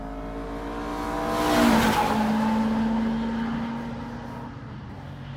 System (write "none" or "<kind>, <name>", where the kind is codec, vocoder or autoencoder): none